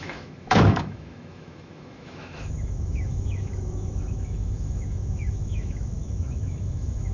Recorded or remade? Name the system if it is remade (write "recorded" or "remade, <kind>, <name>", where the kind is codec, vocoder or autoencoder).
remade, autoencoder, DAC-VAE